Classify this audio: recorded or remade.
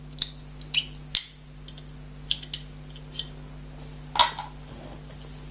recorded